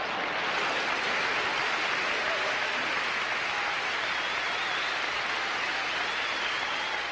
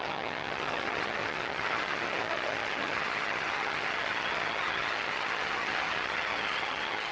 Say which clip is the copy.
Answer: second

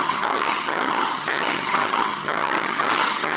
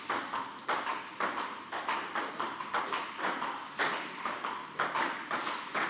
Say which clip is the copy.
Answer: first